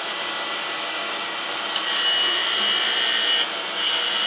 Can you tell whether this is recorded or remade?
recorded